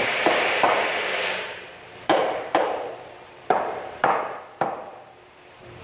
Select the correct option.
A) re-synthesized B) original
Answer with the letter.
A